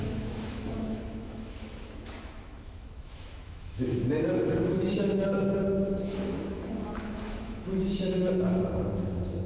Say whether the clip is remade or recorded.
remade